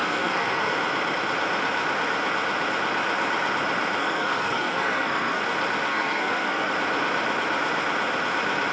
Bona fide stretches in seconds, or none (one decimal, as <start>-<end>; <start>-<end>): 0.7-4.0; 5.4-5.9; 6.7-8.7